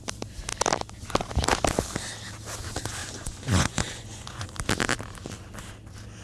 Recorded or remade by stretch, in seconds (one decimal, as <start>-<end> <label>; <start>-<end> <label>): 0.0-3.0 recorded; 3.0-4.5 remade; 4.5-6.2 recorded